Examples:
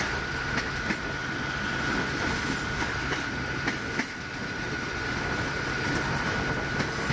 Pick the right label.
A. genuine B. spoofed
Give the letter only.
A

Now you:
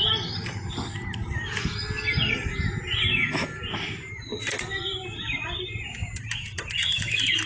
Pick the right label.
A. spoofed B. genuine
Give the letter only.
B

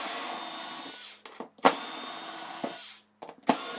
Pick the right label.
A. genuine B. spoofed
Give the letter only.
A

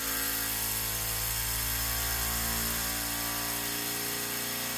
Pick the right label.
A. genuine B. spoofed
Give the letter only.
A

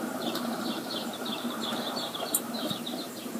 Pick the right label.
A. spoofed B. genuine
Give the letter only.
A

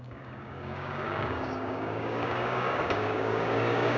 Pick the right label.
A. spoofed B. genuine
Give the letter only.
A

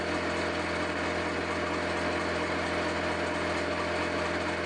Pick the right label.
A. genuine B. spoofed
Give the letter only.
A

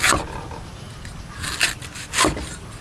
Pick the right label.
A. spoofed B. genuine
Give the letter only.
B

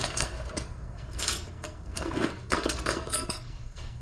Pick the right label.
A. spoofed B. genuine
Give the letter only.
A